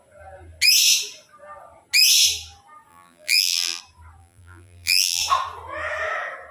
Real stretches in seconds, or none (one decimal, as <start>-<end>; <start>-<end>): 0.0-2.9; 3.8-4.2; 5.2-6.5